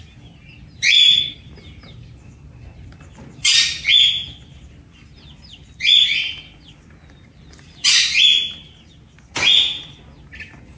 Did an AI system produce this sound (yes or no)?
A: no